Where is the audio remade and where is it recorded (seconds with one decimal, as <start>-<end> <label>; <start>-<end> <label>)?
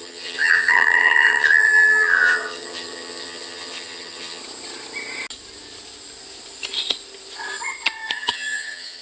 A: 0.0-4.4 remade; 4.4-8.1 recorded; 8.1-9.0 remade